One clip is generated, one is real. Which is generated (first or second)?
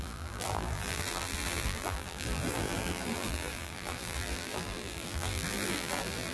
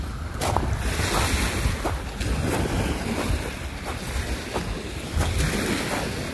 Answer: first